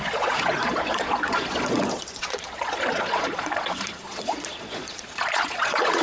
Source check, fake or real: fake